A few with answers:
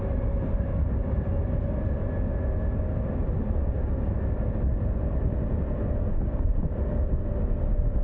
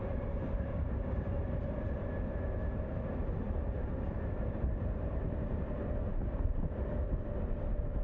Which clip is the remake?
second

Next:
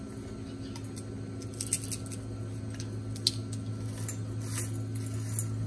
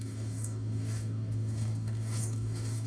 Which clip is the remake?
second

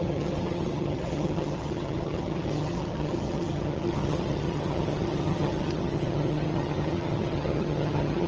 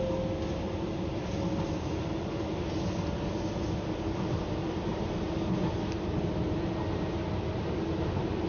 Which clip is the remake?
first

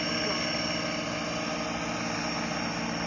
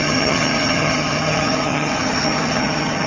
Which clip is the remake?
second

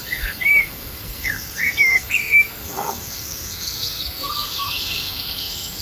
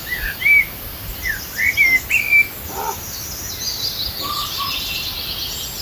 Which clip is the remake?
first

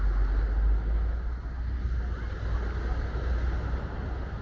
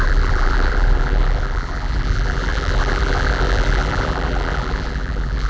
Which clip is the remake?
second